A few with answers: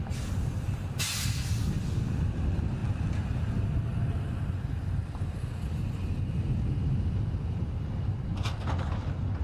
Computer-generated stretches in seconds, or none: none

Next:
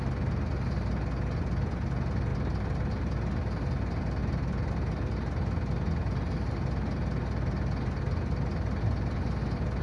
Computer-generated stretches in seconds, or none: 2.3-2.9; 4.2-4.7

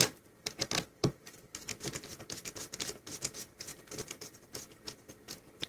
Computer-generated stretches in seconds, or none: 0.0-2.1; 3.2-5.7

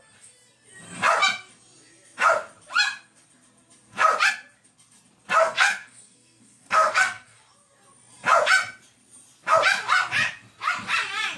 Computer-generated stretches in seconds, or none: 5.4-7.4